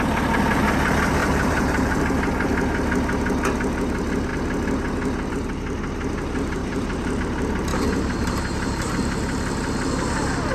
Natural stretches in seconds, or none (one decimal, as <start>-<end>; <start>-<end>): 0.0-1.2; 2.0-6.6; 7.2-7.7; 8.9-10.5